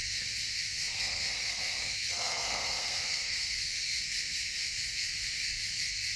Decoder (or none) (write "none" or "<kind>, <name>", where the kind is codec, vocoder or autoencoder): codec, SNAC